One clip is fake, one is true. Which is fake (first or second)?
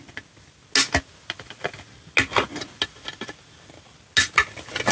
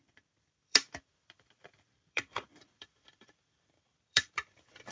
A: second